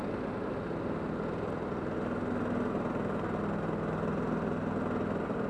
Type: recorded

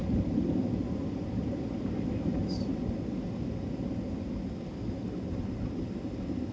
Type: recorded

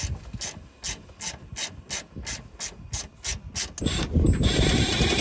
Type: recorded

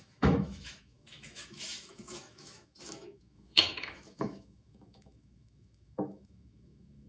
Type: remade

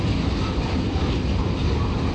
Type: recorded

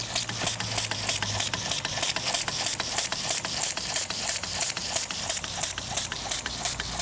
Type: recorded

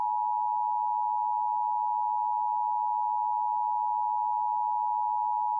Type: remade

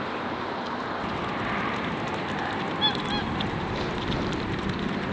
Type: recorded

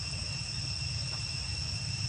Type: recorded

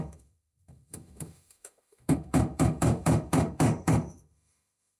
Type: remade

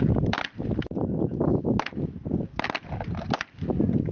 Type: recorded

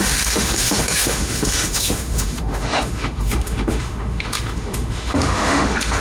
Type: remade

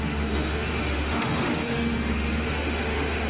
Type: remade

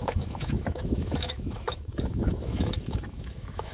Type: remade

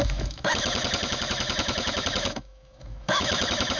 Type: remade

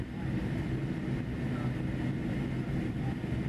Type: recorded